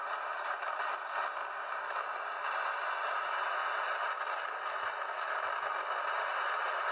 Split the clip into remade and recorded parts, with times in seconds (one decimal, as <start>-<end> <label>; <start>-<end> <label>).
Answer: 0.0-0.9 remade; 0.9-6.9 recorded